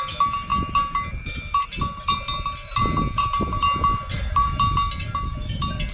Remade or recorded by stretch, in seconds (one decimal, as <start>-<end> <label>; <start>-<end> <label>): 0.0-5.9 recorded